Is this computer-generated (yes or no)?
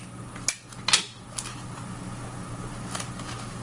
no